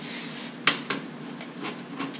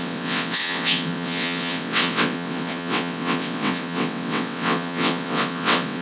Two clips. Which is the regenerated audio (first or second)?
second